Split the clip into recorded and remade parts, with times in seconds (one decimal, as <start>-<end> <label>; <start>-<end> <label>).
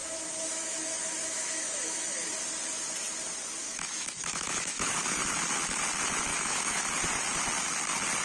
0.0-2.3 remade; 2.3-3.6 recorded; 3.6-5.2 remade; 5.2-6.3 recorded; 6.3-6.8 remade; 6.8-8.2 recorded